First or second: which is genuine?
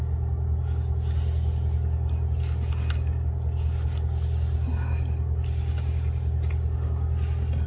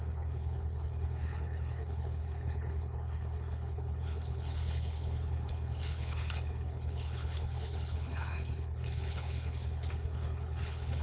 first